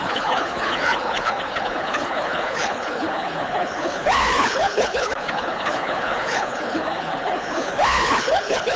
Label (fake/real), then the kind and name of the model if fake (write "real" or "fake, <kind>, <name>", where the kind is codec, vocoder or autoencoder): fake, codec, HILCodec